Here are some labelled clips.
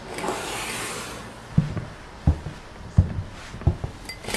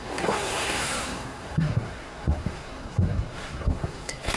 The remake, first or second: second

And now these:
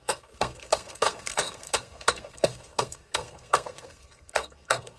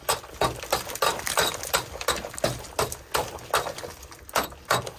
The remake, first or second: first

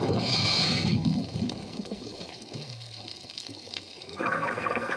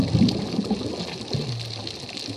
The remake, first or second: first